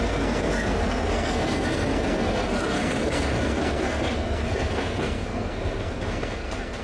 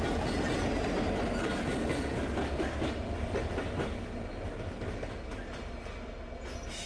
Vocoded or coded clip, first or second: first